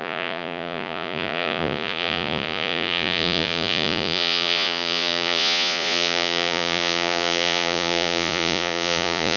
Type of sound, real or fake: fake